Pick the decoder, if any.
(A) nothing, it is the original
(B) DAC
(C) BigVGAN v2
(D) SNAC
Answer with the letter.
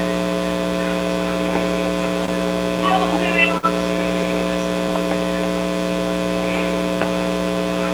A